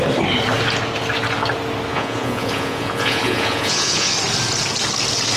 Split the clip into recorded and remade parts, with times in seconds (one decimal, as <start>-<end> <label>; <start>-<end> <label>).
0.0-1.9 recorded; 1.9-4.1 remade; 4.1-5.4 recorded